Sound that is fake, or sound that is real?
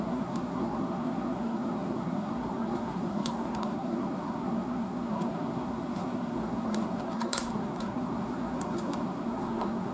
fake